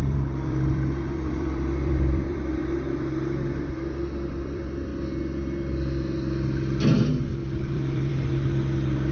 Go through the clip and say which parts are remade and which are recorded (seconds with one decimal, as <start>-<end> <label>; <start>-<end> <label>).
0.0-2.6 remade; 2.6-3.7 recorded; 3.7-4.9 remade; 4.9-7.7 recorded; 7.7-8.1 remade; 8.1-9.1 recorded

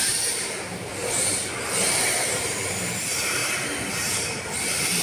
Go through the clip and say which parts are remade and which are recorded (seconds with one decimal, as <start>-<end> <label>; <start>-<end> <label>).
0.0-5.0 remade

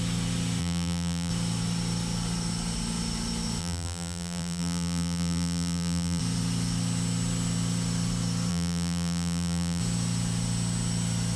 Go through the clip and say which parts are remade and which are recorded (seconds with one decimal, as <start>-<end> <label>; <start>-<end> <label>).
0.0-0.6 recorded; 0.6-1.3 remade; 1.3-3.6 recorded; 3.6-6.2 remade; 6.2-8.5 recorded; 8.5-9.8 remade; 9.8-11.4 recorded